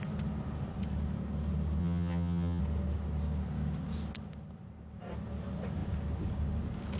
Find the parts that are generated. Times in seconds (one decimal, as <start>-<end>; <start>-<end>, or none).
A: 1.8-2.6